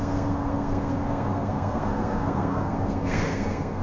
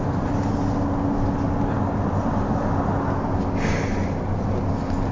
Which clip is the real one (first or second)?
second